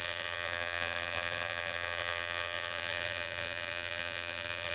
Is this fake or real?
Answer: fake